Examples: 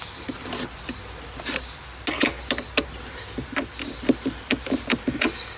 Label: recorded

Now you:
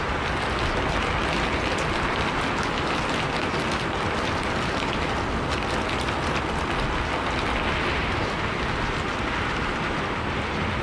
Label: recorded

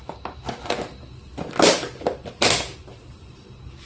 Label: recorded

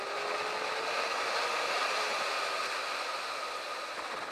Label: recorded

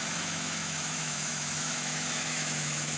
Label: remade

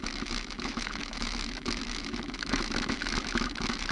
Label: remade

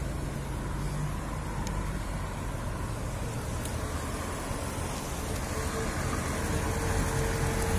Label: recorded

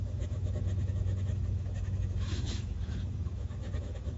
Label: remade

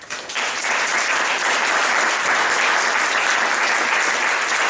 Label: recorded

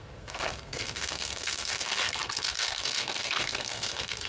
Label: remade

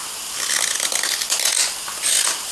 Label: recorded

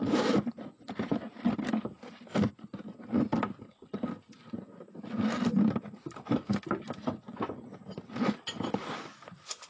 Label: recorded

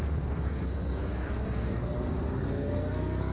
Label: remade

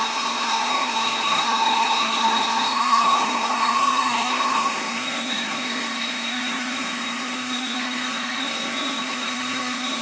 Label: remade